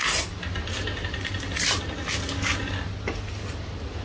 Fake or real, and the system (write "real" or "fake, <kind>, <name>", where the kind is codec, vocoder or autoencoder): real